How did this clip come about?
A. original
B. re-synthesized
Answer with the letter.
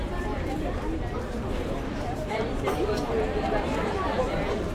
B